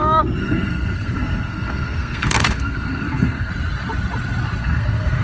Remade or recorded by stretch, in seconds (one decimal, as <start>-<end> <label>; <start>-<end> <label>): 0.0-0.4 recorded; 0.4-3.5 remade; 3.5-4.6 recorded; 4.6-5.2 remade